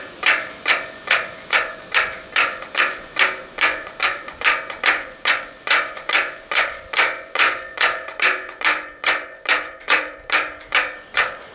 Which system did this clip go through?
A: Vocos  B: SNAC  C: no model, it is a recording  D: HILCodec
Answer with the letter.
A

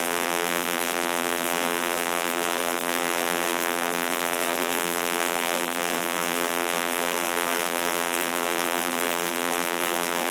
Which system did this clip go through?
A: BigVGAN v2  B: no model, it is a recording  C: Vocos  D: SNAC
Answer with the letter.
A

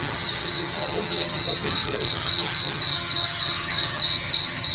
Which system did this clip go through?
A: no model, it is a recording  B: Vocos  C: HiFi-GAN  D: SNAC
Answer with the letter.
C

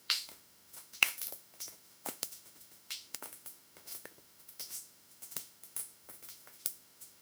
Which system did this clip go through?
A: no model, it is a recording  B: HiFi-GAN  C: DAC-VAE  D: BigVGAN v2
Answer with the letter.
C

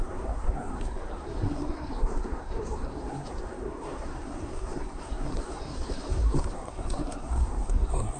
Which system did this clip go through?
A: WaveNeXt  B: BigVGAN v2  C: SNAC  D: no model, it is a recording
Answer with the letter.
C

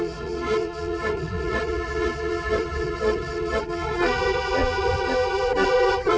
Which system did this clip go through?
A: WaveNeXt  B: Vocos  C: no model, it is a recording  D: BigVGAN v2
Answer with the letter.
B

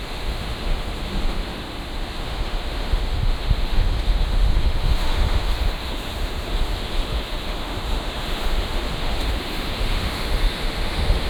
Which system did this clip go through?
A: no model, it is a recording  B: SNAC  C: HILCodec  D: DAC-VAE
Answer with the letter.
D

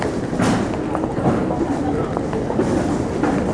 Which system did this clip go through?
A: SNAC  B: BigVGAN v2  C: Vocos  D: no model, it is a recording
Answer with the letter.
D